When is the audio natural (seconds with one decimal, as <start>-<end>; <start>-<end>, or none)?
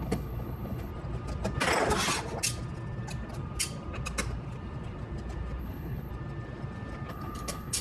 0.9-5.6; 6.1-7.1